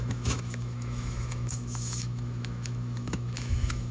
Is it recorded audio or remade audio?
remade